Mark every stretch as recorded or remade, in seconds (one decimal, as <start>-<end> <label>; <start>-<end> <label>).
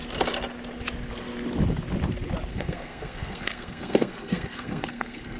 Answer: 0.0-2.5 recorded; 2.5-5.4 remade